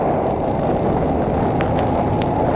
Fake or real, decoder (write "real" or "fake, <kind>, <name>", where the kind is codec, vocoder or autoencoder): real